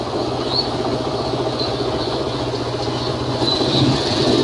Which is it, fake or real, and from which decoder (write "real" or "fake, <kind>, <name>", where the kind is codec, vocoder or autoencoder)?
fake, vocoder, Vocos